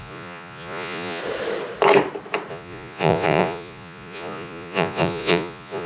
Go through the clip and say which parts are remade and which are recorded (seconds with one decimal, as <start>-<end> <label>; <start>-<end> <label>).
0.0-1.2 remade; 1.2-2.5 recorded; 2.5-5.9 remade